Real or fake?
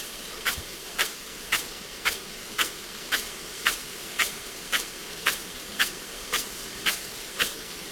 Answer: fake